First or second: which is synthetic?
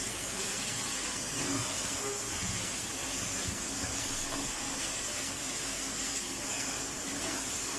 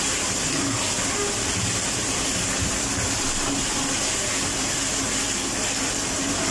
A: first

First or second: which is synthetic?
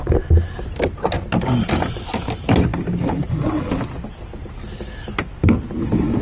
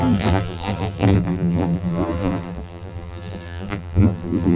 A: second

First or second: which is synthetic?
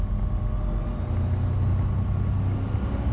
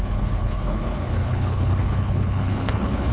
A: second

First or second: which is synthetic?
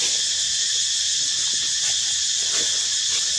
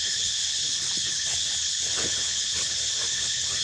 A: second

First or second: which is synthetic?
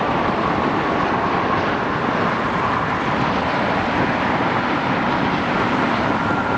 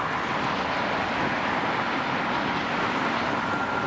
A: first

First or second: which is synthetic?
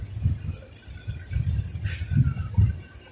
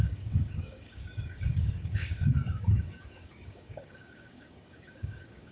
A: second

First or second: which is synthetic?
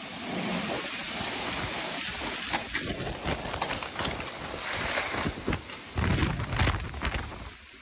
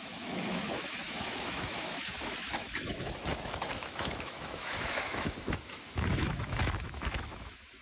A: second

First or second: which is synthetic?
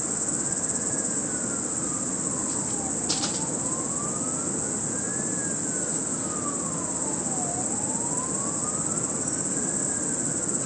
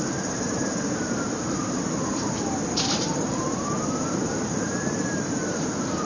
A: second